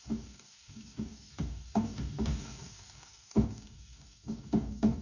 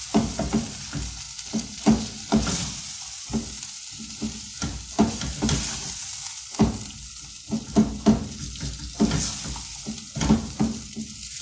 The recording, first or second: second